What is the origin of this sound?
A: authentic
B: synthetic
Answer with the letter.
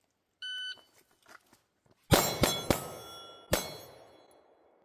A